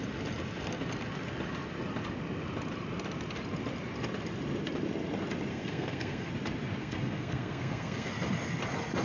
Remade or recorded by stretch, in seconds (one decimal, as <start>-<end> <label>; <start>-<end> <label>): 0.0-5.5 recorded; 5.5-6.3 remade; 6.3-6.8 recorded; 6.8-8.1 remade; 8.1-9.0 recorded